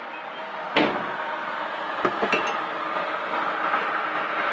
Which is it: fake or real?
real